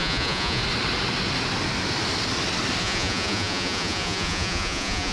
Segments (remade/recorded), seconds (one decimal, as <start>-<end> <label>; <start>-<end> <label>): 0.0-0.6 remade; 0.6-2.8 recorded; 2.8-5.1 remade